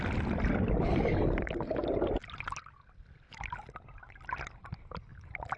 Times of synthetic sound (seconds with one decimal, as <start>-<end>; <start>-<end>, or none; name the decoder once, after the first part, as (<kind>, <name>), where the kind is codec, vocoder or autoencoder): none